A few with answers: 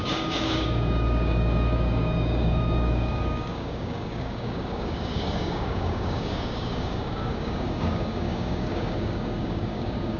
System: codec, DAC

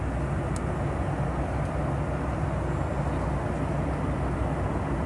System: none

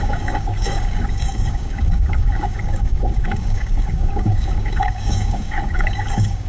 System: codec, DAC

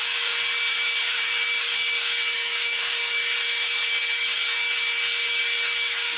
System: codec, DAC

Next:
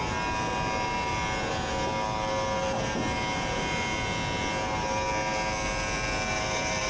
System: none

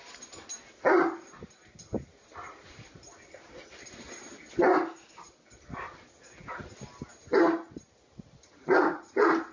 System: none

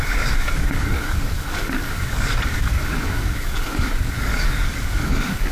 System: codec, DAC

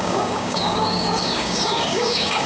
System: codec, DAC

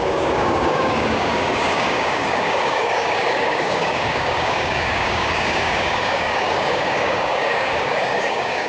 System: codec, DAC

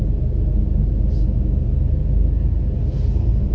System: none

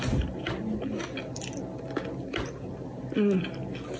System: none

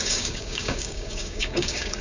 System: codec, DAC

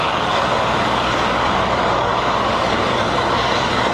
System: codec, DAC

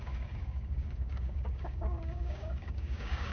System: codec, DAC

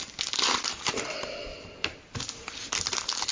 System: none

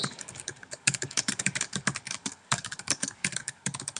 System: codec, DAC